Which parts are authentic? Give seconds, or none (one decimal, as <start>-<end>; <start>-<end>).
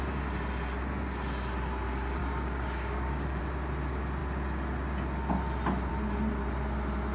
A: 0.0-2.2; 3.4-7.1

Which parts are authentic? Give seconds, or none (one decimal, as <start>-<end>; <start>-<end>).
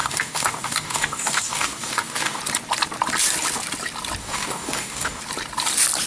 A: 2.4-4.2; 5.2-6.1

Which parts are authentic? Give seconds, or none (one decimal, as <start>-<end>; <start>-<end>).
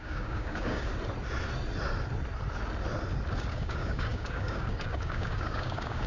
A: 0.9-3.3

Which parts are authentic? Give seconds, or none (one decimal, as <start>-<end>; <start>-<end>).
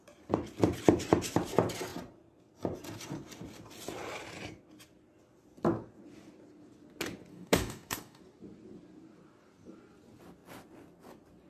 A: 0.0-7.3; 8.2-11.5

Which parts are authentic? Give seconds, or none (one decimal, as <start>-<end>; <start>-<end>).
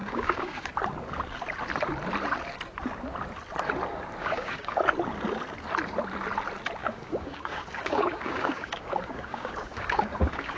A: 0.7-4.2; 4.8-6.8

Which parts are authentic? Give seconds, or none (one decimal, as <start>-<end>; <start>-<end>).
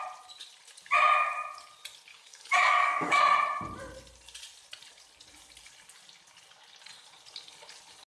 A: 0.0-2.1; 3.2-8.1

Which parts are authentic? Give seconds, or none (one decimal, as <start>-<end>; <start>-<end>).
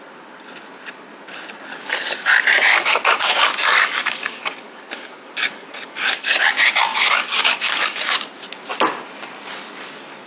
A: 0.0-1.7; 2.3-2.7; 6.5-6.9; 8.1-10.3